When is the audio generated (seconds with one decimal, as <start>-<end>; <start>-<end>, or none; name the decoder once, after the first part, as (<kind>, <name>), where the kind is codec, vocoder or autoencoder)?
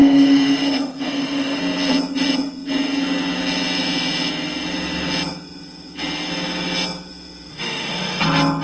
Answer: 0.0-1.6 (autoencoder, DAC-VAE); 7.5-8.2